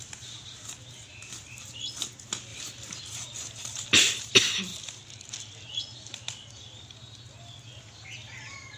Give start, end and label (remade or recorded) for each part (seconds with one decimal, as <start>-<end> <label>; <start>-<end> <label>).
0.0-4.7 recorded; 4.7-5.3 remade; 5.3-8.8 recorded